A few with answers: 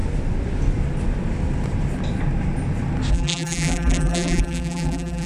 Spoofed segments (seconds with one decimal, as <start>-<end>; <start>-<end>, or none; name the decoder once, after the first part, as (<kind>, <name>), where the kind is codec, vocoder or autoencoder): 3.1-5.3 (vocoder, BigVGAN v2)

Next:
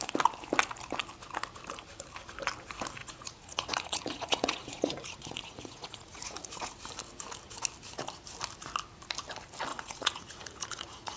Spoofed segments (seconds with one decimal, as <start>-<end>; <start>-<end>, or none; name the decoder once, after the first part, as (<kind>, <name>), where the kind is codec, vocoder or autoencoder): 3.0-6.7 (vocoder, Vocos); 9.7-11.2

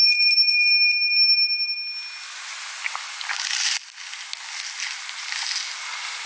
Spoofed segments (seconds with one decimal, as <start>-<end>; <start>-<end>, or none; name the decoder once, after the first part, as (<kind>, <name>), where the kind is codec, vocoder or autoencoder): none

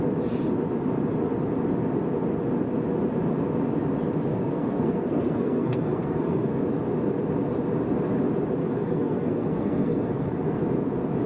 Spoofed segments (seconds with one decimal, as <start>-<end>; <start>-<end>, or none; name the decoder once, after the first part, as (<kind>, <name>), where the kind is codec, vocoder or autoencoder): 4.3-6.6 (codec, SNAC); 8.6-10.6